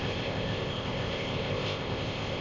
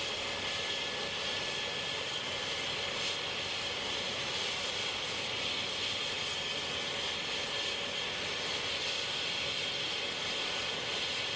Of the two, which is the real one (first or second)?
second